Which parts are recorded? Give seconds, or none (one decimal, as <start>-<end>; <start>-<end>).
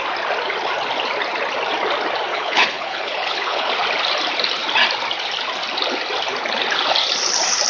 0.0-2.3; 3.7-7.7